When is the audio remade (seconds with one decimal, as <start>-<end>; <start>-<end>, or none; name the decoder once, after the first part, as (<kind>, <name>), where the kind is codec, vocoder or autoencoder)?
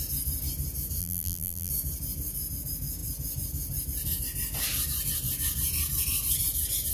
1.0-1.7 (vocoder, BigVGAN v2)